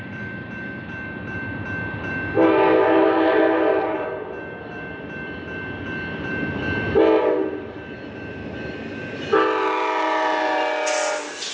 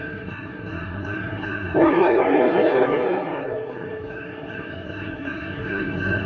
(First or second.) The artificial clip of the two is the second